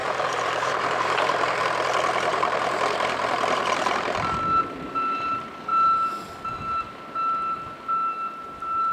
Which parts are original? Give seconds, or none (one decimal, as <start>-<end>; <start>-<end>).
1.6-2.3; 4.4-8.9